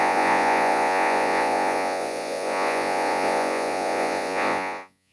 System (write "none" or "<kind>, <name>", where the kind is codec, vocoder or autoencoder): vocoder, Vocos